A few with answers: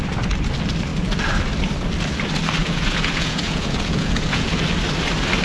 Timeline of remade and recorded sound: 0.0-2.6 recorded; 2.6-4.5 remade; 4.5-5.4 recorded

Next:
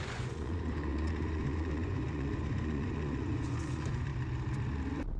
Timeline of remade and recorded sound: 0.0-4.1 remade; 4.1-5.2 recorded

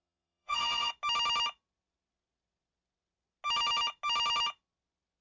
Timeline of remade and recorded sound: 0.0-0.9 remade; 0.9-5.2 recorded

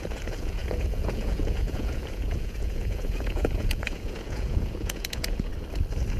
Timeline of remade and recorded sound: 0.0-5.5 remade; 5.5-6.2 recorded

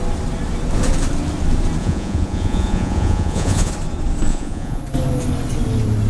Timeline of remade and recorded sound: 0.0-1.8 recorded; 1.8-3.7 remade; 3.7-4.3 recorded; 4.3-4.8 remade; 4.8-6.1 recorded